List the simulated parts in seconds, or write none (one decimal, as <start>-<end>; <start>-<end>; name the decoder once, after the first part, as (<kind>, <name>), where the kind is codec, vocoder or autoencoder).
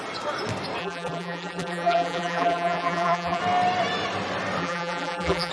0.8-3.4 (vocoder, BigVGAN v2); 4.6-5.5